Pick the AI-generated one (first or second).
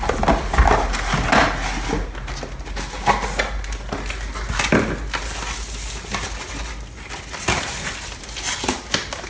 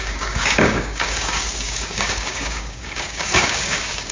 second